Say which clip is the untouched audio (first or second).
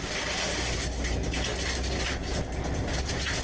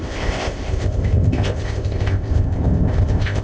first